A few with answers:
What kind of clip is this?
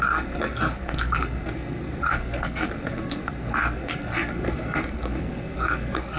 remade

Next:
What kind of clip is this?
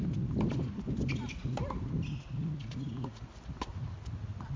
recorded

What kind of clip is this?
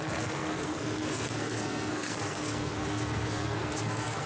remade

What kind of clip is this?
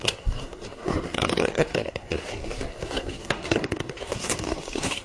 remade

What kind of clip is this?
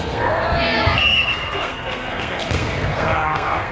remade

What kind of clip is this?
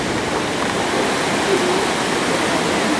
recorded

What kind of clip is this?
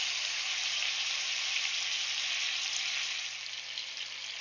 recorded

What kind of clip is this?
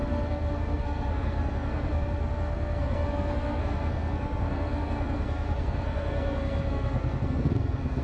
remade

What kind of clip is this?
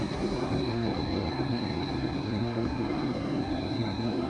remade